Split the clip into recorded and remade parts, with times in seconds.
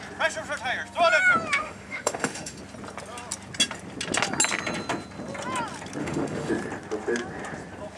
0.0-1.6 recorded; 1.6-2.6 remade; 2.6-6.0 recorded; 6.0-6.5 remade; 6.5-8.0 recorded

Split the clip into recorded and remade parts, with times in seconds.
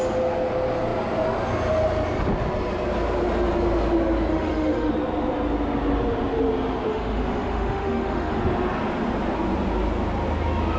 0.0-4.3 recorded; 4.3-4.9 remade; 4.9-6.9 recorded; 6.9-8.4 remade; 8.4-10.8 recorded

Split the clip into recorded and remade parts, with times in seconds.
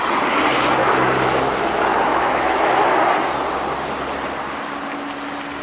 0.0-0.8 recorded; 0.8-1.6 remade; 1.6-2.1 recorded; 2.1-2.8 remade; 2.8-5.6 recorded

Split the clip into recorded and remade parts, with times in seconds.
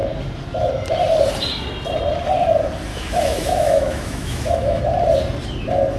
0.0-2.9 recorded; 2.9-4.8 remade; 4.8-6.0 recorded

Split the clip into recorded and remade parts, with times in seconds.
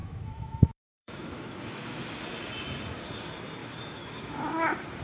0.0-2.0 remade; 2.0-3.6 recorded; 3.6-4.5 remade; 4.5-5.0 recorded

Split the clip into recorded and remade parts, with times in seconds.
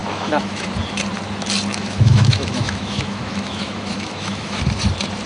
0.0-0.7 remade; 0.7-1.7 recorded; 1.7-4.6 remade; 4.6-5.3 recorded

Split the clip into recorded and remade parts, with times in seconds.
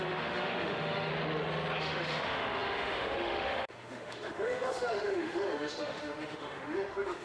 0.0-1.1 remade; 1.1-1.8 recorded; 1.8-7.2 remade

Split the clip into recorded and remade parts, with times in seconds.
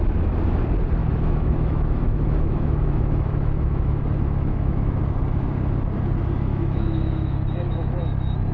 0.0-1.0 recorded; 1.0-5.0 remade; 5.0-6.5 recorded; 6.5-8.0 remade; 8.0-8.5 recorded